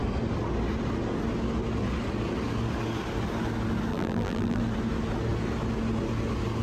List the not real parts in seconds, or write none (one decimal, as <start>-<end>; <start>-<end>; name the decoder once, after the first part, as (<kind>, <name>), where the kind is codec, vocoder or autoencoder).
3.9-4.6 (vocoder, BigVGAN v2)